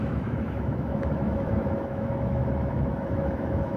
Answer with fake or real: fake